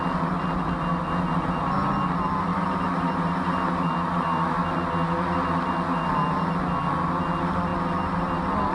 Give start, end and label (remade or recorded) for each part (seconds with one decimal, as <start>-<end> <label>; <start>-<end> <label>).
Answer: 0.0-8.7 recorded